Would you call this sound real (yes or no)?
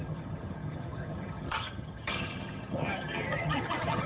no